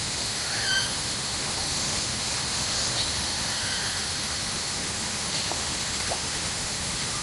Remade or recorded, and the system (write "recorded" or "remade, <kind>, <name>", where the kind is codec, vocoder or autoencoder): remade, autoencoder, DAC-VAE